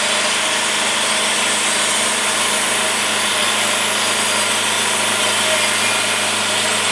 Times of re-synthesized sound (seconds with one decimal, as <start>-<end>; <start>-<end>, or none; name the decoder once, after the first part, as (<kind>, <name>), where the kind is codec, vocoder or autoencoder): none